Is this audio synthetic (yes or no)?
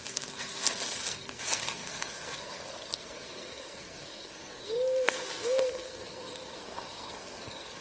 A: yes